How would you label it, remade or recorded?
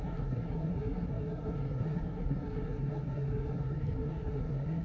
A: remade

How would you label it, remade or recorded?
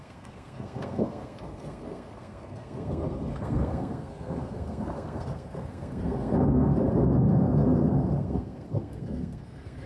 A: remade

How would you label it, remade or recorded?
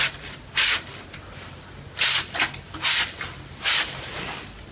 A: recorded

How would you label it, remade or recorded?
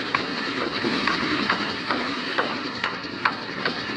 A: remade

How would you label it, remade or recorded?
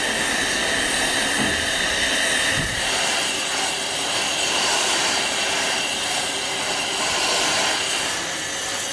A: recorded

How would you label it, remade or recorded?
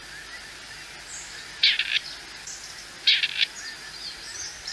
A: recorded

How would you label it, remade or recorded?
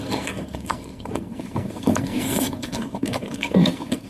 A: remade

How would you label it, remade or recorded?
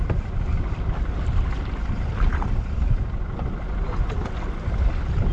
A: recorded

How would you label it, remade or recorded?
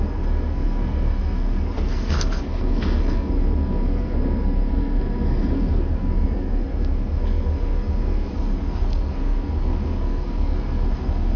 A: remade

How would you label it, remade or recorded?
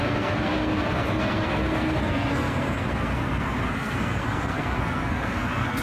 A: remade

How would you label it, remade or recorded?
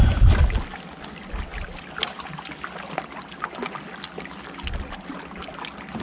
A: recorded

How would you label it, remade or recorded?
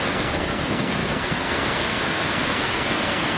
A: remade